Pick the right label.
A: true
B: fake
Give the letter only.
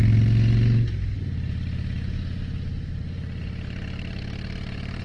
A